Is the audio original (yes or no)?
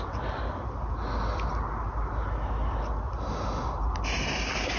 yes